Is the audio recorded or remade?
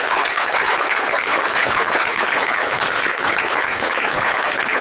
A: remade